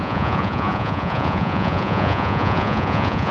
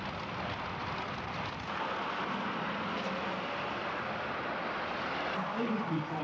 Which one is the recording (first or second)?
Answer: second